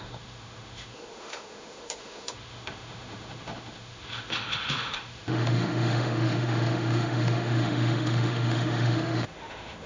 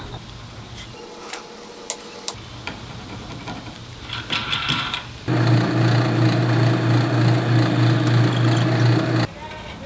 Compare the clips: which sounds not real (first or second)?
first